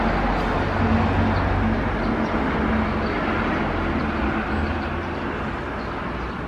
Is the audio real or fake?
real